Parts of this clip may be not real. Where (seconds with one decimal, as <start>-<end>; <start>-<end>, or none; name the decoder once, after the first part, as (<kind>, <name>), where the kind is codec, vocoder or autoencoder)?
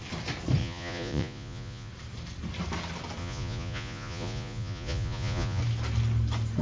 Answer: 0.6-1.9 (vocoder, Vocos); 3.2-5.6